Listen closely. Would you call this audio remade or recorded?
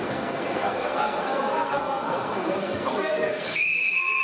remade